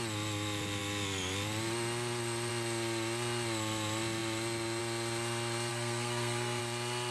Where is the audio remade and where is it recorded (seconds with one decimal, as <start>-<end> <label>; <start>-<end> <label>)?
0.0-5.7 recorded; 5.7-6.6 remade; 6.6-7.1 recorded